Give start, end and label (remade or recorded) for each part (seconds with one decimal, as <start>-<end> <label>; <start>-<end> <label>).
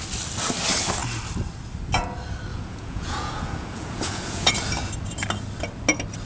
0.0-2.5 recorded; 2.5-4.5 remade; 4.5-6.3 recorded